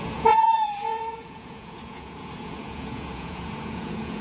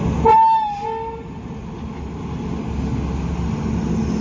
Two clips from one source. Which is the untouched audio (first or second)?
second